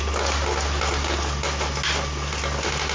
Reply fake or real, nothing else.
real